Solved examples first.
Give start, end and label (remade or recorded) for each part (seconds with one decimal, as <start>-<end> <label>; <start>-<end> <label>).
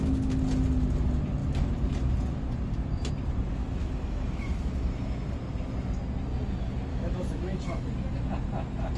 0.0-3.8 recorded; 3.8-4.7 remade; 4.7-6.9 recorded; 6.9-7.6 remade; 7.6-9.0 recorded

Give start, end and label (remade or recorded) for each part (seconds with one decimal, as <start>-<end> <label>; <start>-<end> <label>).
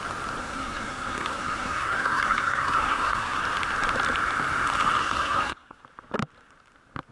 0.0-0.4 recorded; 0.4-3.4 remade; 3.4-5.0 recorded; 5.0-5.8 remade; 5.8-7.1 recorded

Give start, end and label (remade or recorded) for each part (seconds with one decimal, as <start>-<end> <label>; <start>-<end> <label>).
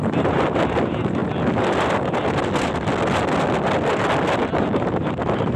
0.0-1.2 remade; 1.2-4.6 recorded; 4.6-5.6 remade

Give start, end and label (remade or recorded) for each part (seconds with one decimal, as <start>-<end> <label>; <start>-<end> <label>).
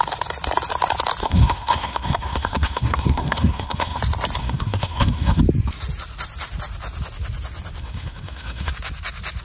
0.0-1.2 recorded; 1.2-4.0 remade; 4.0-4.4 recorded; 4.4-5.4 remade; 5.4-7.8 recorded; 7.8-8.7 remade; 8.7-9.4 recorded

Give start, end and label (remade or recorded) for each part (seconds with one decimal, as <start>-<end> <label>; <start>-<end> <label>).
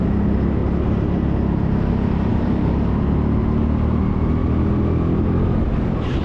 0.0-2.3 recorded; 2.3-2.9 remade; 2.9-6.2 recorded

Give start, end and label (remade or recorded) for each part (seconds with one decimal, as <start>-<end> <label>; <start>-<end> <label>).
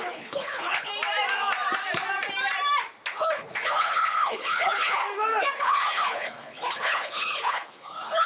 0.0-0.9 remade; 0.9-3.1 recorded; 3.1-5.0 remade; 5.0-5.6 recorded; 5.6-8.3 remade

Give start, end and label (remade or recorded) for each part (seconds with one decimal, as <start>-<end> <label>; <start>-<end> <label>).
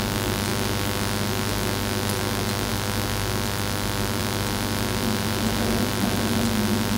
0.0-7.0 recorded